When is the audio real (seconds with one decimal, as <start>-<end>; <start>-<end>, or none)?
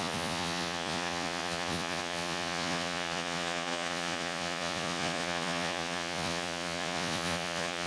none